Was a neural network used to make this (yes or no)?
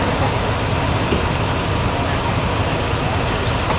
no